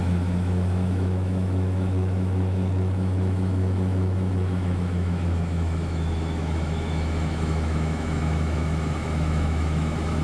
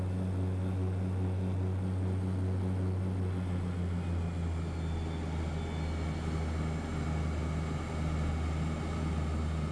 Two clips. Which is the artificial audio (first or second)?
first